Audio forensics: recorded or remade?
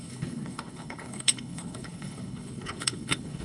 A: remade